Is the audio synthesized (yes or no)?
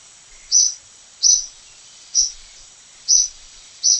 yes